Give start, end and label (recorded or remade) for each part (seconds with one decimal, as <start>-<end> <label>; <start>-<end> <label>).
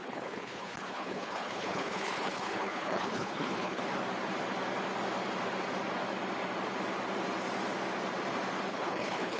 0.0-3.8 remade; 3.8-8.7 recorded; 8.7-9.4 remade